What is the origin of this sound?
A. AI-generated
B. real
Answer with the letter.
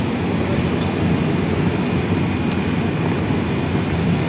B